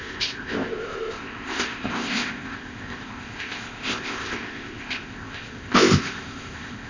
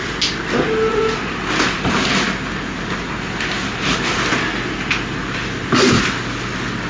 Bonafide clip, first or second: second